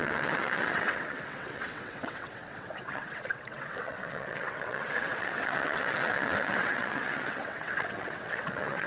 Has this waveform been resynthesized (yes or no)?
yes